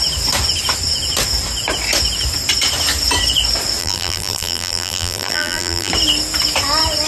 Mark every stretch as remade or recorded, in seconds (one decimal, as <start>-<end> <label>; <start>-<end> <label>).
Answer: 0.0-3.8 recorded; 3.8-5.9 remade; 5.9-7.1 recorded